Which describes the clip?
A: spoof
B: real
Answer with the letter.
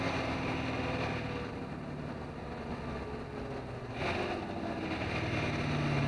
B